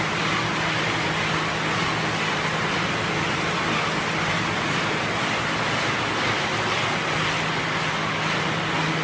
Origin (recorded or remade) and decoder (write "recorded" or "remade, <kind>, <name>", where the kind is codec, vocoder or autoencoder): recorded